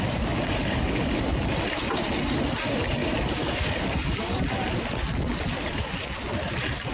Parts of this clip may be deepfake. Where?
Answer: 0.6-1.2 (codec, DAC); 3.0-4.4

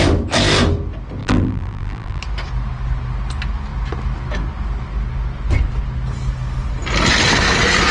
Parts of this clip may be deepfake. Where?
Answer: 1.2-2.2 (vocoder, BigVGAN v2)